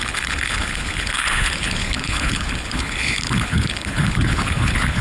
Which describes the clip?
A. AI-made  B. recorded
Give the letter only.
A